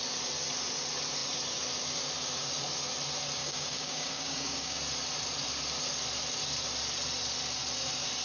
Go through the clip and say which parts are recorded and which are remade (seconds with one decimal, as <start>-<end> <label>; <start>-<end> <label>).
0.0-3.4 recorded; 3.4-4.8 remade; 4.8-8.2 recorded